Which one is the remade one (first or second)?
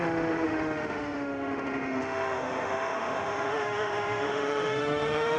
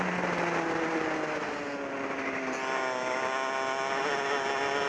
first